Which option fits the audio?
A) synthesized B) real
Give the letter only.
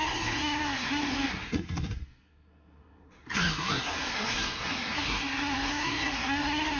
A